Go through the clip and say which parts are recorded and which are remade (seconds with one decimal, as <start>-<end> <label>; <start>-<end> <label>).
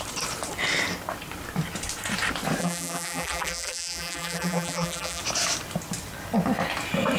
0.0-2.6 recorded; 2.6-5.2 remade; 5.2-7.2 recorded